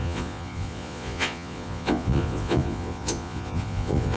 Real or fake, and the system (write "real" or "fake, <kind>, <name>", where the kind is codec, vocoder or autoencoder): fake, vocoder, Vocos